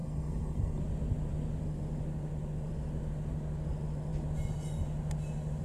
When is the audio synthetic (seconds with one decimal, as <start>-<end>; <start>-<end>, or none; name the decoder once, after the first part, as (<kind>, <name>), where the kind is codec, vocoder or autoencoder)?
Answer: 0.0-0.8 (codec, SNAC)

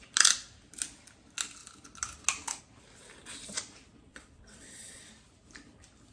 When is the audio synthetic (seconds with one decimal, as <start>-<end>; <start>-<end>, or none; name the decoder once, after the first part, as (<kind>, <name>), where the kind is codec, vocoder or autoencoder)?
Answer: 4.1-5.1 (vocoder, WaveNeXt)